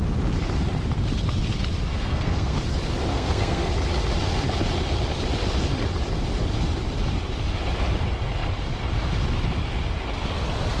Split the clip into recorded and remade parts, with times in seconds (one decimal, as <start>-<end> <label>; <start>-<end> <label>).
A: 0.0-1.9 recorded; 1.9-2.6 remade; 2.6-3.1 recorded; 3.1-3.7 remade; 3.7-10.8 recorded